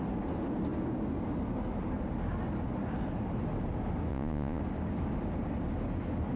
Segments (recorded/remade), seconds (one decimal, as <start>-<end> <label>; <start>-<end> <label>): 0.0-4.1 recorded; 4.1-4.6 remade; 4.6-6.4 recorded